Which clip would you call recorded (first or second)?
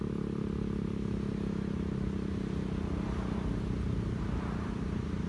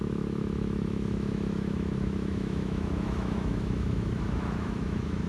first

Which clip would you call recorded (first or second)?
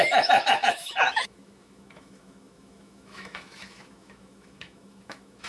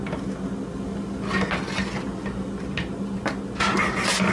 second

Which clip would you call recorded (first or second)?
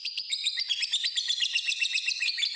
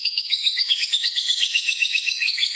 first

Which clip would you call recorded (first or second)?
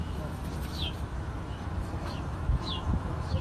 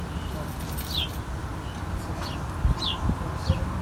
second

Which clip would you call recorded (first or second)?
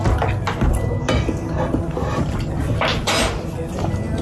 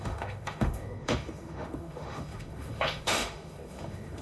first